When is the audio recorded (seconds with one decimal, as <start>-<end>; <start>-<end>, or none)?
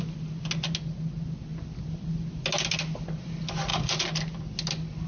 0.0-5.1